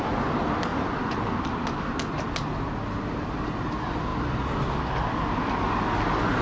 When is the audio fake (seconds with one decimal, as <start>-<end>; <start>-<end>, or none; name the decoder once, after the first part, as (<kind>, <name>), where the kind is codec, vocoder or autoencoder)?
none